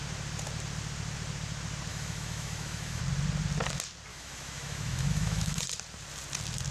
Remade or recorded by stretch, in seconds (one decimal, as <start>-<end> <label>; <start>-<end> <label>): 0.0-1.9 recorded; 1.9-3.0 remade; 3.0-4.1 recorded; 4.1-5.6 remade; 5.6-6.7 recorded